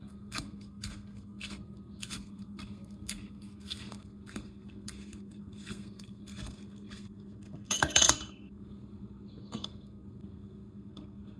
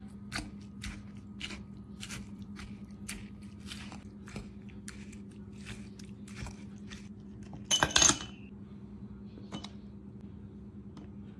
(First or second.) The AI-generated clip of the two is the first